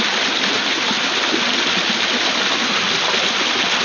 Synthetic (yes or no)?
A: no